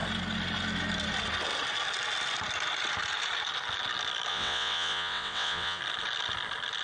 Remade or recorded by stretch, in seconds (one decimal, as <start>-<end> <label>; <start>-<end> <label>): 0.0-4.3 recorded; 4.3-5.8 remade; 5.8-6.8 recorded